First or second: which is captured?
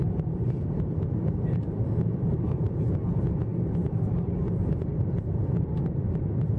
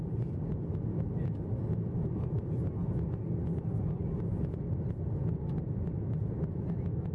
second